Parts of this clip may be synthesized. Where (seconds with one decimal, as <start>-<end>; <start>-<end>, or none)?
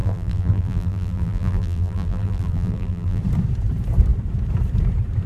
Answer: 0.0-3.2